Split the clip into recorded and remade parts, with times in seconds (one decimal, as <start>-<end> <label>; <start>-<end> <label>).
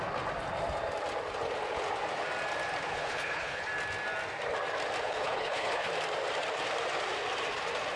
0.0-2.9 recorded; 2.9-3.6 remade; 3.6-5.0 recorded; 5.0-5.9 remade; 5.9-8.0 recorded